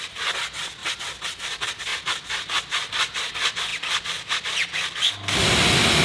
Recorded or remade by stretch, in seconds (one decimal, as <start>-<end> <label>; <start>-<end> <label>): 0.0-6.0 recorded